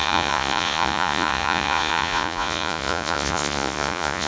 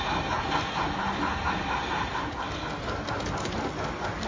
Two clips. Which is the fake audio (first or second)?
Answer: first